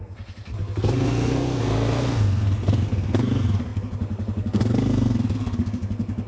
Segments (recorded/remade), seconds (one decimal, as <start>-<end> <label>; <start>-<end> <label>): 0.0-6.3 remade